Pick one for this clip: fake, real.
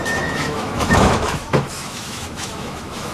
fake